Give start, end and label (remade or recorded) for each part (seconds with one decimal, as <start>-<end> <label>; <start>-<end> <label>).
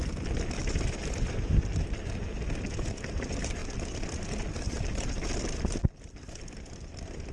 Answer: 0.0-0.6 recorded; 0.6-1.6 remade; 1.6-3.1 recorded; 3.1-3.6 remade; 3.6-6.4 recorded; 6.4-7.3 remade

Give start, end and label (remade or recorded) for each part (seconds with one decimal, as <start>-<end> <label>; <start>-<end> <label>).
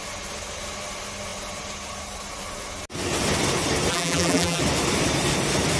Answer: 0.0-3.9 recorded; 3.9-4.6 remade; 4.6-5.8 recorded